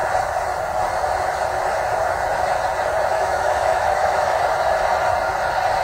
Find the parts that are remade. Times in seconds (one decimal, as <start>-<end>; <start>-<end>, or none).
3.1-4.4